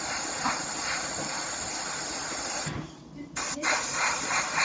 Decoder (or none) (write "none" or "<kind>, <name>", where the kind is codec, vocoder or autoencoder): none